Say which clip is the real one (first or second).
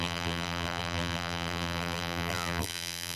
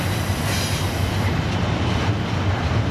second